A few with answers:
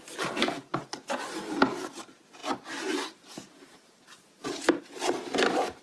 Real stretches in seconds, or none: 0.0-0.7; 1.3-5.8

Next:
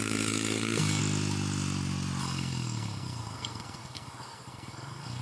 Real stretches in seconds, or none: 1.0-2.2

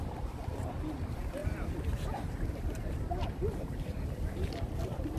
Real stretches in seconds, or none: none

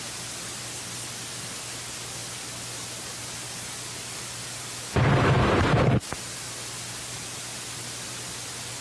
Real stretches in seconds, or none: 0.0-8.8

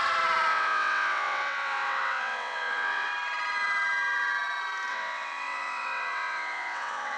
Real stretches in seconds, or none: 0.0-0.5; 3.1-4.9

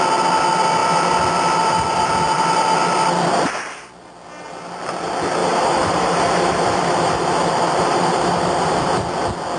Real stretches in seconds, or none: 0.0-5.4; 9.0-9.6

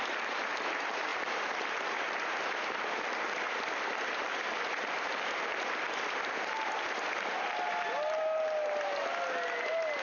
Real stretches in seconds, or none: 0.0-10.0